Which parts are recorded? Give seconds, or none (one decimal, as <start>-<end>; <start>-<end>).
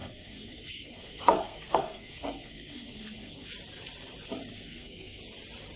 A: 3.5-4.5; 5.2-5.8